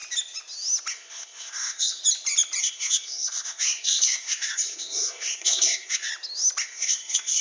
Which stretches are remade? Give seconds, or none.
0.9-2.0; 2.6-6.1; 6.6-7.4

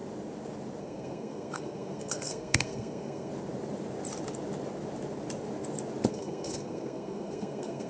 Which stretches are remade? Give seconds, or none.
0.8-3.3; 6.1-7.9

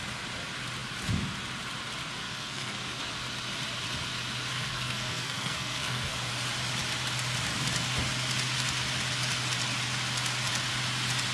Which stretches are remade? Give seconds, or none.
2.2-3.1; 4.5-6.3

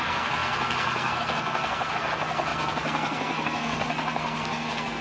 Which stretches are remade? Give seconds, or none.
0.0-5.0

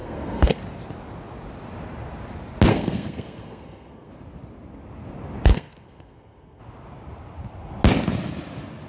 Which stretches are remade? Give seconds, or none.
0.0-0.6; 2.7-4.1; 5.5-6.6

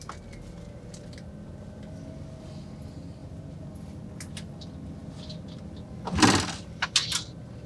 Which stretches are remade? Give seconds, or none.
none

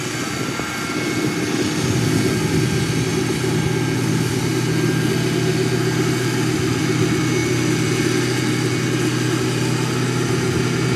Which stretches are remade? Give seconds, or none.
none

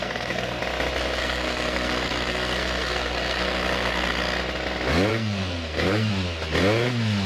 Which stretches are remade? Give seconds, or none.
0.0-0.6; 1.2-4.2; 5.1-6.1